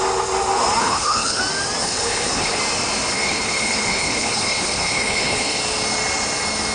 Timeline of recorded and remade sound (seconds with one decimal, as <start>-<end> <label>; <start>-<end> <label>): 0.0-0.8 recorded; 0.8-1.4 remade; 1.4-1.8 recorded; 1.8-2.6 remade; 2.6-3.1 recorded; 3.1-5.6 remade; 5.6-6.7 recorded